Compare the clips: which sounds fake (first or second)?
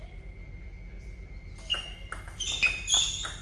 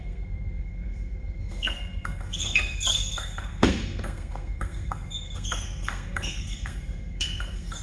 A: second